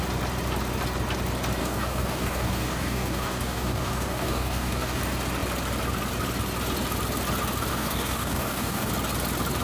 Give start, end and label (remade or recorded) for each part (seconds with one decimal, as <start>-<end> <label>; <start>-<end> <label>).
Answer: 0.0-1.6 recorded; 1.6-5.0 remade; 5.0-7.7 recorded; 7.7-8.9 remade; 8.9-9.6 recorded